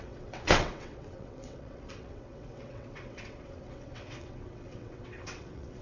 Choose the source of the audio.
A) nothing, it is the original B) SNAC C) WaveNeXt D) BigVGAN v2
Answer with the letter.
C